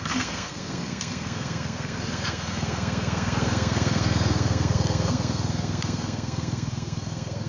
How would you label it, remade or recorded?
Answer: remade